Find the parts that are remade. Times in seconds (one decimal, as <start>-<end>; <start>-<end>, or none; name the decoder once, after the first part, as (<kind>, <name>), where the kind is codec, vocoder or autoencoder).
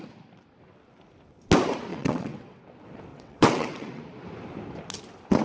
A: 1.9-2.6 (vocoder, WaveNeXt); 3.1-4.0